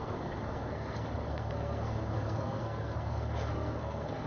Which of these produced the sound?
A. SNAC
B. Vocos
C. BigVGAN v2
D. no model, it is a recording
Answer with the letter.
A